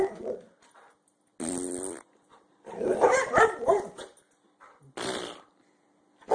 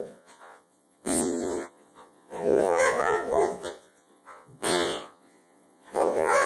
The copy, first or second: second